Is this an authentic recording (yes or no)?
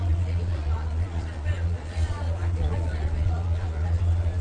no